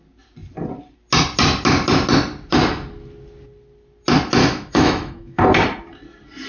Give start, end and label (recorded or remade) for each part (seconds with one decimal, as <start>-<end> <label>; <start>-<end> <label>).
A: 0.0-4.4 recorded; 4.4-5.4 remade; 5.4-6.5 recorded